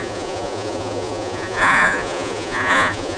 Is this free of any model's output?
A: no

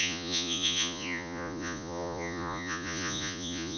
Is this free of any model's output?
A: no